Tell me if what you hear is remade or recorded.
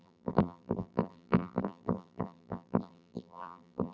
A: remade